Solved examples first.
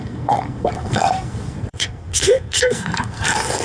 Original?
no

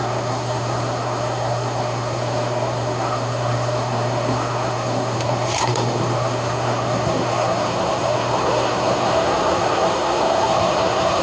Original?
no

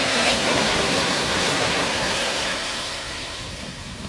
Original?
no